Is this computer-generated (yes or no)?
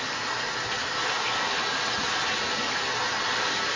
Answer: no